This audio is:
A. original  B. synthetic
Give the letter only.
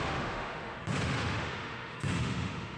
B